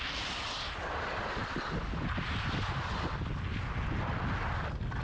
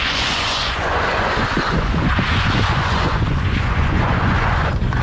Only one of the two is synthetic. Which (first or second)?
second